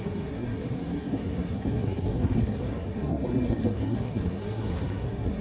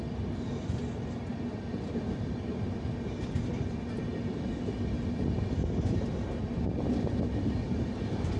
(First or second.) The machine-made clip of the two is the first